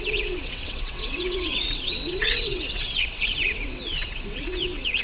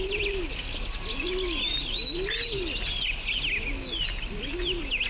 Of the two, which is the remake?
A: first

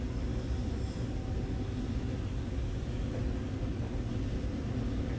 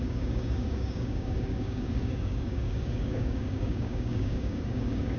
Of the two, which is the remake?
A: second